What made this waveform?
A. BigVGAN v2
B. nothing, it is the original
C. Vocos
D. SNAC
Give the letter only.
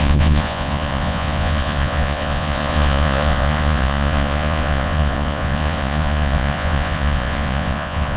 C